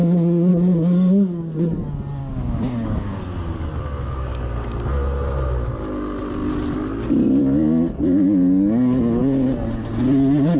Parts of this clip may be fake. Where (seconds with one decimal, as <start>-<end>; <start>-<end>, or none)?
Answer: 0.5-1.5; 2.2-3.2